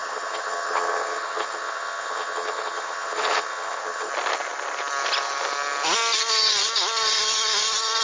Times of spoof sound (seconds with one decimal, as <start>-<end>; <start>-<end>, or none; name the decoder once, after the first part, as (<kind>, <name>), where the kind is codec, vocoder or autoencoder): 0.0-4.1 (vocoder, HiFi-GAN)